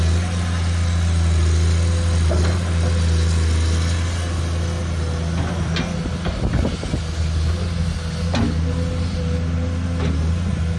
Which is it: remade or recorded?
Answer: recorded